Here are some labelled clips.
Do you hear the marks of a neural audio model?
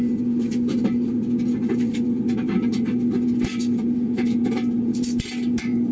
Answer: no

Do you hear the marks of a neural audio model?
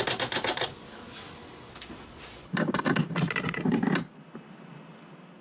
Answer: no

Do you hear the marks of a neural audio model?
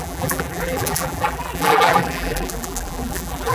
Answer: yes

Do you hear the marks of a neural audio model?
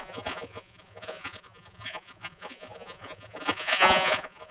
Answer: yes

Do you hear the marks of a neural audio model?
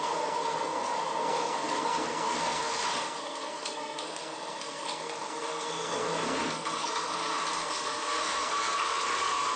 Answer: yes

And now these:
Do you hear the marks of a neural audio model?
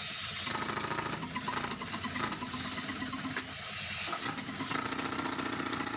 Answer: no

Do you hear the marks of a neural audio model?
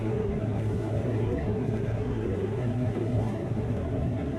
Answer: yes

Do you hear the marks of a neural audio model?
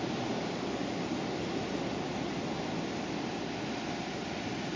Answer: no